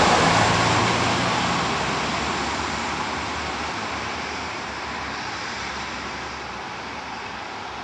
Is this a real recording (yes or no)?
yes